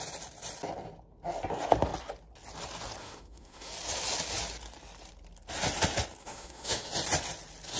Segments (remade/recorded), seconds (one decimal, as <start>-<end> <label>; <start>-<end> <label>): 0.0-3.0 recorded; 3.0-3.7 remade; 3.7-6.2 recorded; 6.2-6.9 remade; 6.9-7.8 recorded